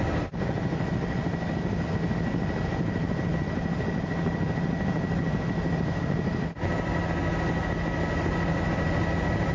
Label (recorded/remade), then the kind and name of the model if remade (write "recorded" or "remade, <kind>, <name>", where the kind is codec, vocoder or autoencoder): recorded